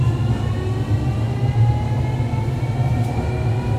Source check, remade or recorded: recorded